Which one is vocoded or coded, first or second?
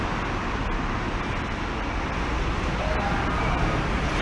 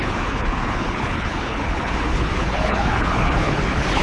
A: second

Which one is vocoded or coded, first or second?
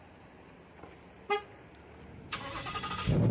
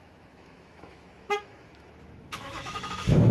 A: second